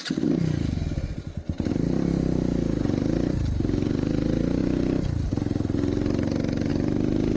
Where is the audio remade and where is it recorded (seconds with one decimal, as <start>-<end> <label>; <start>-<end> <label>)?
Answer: 0.0-7.4 recorded